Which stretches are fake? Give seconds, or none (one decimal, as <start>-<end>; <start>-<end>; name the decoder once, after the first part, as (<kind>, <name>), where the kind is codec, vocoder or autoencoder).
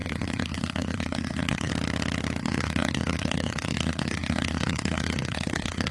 0.0-1.7 (codec, SNAC); 2.4-5.9